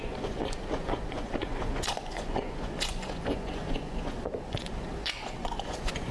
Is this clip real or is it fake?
fake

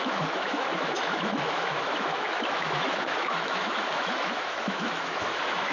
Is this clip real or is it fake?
fake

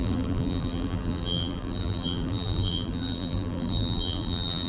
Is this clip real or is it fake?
fake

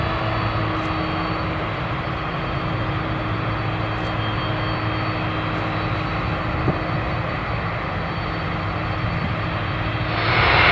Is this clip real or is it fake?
real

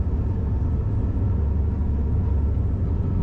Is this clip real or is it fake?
real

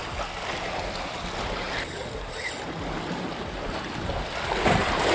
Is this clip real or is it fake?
real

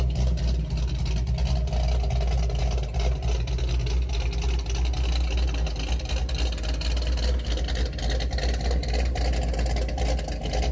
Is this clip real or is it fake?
real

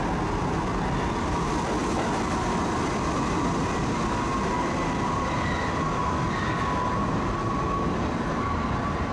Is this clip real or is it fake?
real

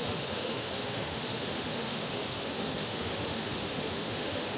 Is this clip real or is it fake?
fake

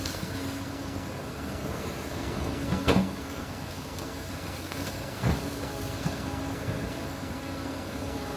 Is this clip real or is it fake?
fake